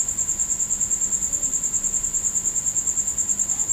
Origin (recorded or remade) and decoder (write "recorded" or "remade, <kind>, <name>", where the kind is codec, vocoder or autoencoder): remade, vocoder, BigVGAN v2